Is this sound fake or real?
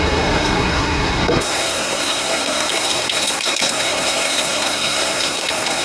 fake